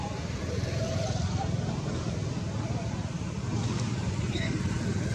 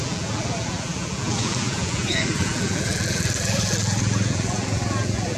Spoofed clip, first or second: second